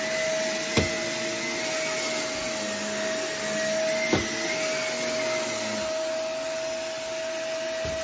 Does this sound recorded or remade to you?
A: recorded